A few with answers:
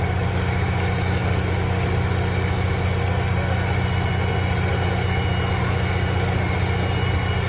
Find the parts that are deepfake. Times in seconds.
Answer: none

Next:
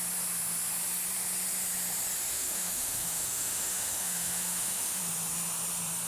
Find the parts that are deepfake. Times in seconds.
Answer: 2.3-5.0 (autoencoder, DAC-VAE)

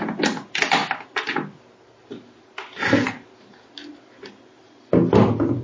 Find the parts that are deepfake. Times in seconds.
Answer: none

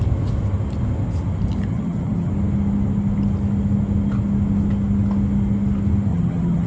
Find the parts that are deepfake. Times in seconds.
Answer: 1.7-2.3 (vocoder, HiFi-GAN); 6.1-6.7

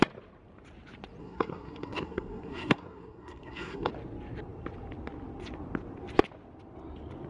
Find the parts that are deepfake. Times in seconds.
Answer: 1.2-3.9 (codec, SNAC)